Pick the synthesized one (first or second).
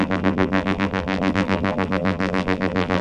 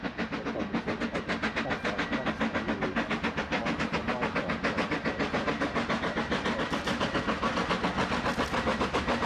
first